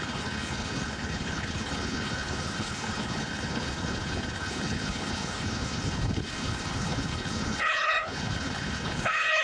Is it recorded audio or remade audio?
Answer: remade